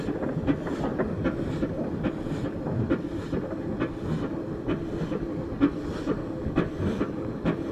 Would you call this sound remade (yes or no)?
no